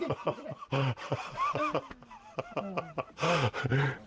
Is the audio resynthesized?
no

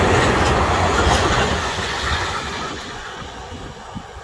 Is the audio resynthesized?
yes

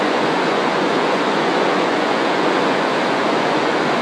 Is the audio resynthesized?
yes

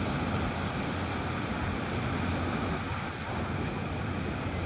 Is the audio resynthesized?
no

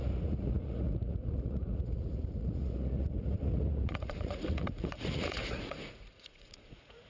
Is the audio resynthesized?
yes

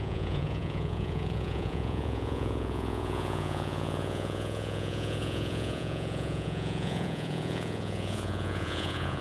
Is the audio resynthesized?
yes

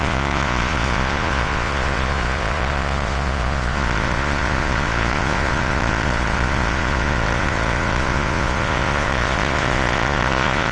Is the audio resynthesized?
yes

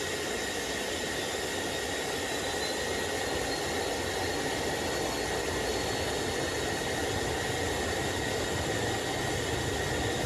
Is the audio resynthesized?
no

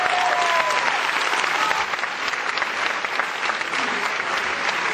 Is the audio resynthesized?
no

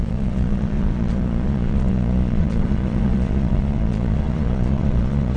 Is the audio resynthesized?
yes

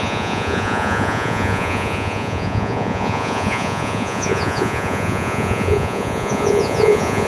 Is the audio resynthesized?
yes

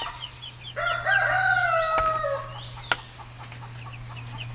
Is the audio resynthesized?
no